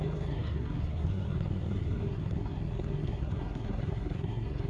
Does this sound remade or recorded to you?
remade